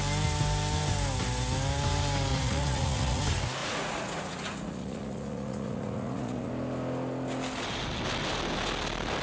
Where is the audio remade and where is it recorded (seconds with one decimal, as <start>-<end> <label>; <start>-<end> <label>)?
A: 0.0-2.3 recorded; 2.3-3.2 remade; 3.2-3.6 recorded; 3.6-6.5 remade; 6.5-9.2 recorded